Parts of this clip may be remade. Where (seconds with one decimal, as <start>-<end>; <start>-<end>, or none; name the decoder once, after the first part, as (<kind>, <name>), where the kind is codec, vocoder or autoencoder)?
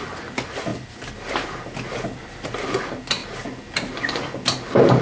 none